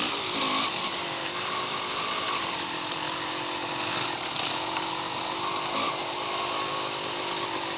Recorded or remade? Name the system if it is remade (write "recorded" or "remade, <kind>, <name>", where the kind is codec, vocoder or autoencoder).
recorded